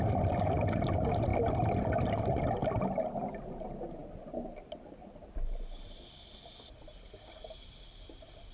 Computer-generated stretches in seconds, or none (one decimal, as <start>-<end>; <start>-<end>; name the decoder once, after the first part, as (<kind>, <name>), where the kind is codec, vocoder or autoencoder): none